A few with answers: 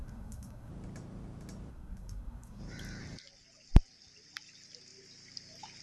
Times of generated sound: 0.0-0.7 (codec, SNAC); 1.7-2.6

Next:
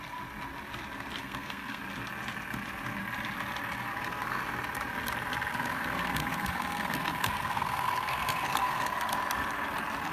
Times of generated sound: 1.2-1.8 (codec, SNAC); 3.9-4.4; 5.5-8.9

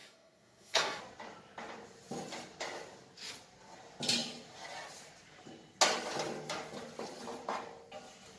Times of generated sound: 0.0-1.0 (codec, SNAC)